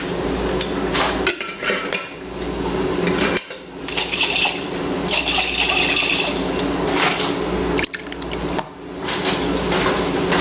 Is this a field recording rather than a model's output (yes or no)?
yes